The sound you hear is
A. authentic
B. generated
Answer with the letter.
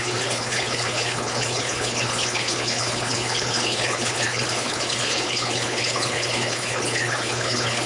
B